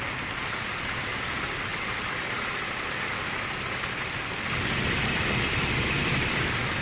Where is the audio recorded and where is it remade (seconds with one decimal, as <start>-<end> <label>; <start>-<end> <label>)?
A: 0.0-6.8 recorded